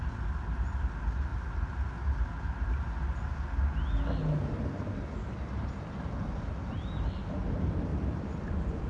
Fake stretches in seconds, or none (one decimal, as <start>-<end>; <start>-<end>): 7.9-8.9